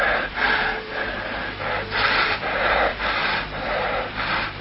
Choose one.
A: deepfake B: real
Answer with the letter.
A